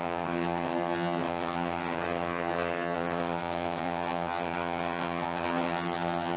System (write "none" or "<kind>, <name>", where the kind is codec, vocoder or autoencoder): vocoder, HiFi-GAN